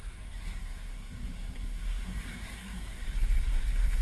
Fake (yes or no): yes